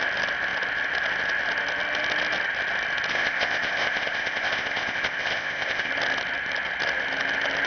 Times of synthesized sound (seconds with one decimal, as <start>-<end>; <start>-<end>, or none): 3.1-5.9